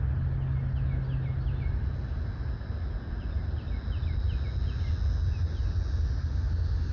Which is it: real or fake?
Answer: real